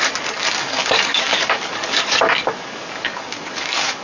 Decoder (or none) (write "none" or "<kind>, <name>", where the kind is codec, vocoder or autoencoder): codec, DAC